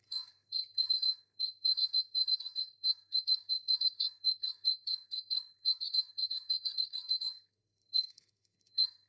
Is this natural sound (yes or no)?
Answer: no